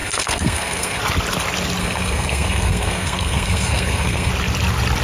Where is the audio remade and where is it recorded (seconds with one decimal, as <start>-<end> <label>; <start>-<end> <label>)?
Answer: 0.0-1.0 remade; 1.0-1.8 recorded; 1.8-4.3 remade; 4.3-5.0 recorded